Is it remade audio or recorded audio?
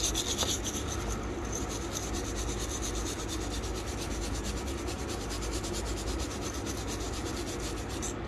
recorded